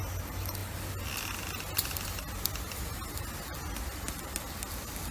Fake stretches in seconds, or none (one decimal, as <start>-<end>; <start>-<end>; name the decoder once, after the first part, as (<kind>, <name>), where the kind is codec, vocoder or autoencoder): none